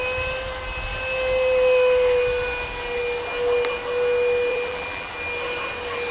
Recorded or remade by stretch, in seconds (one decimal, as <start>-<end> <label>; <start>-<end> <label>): 0.0-4.5 recorded; 4.5-5.1 remade; 5.1-6.1 recorded